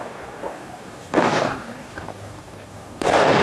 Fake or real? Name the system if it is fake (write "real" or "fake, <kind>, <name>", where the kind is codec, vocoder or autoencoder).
fake, codec, DAC